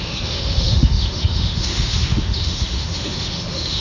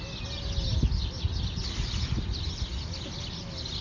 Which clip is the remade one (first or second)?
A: first